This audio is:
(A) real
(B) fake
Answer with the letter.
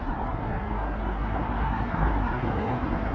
B